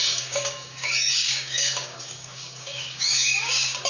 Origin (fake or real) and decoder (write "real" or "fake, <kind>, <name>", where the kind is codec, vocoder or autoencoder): fake, codec, DAC